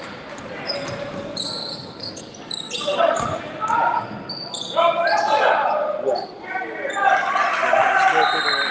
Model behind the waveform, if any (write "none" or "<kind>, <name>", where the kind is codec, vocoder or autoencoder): none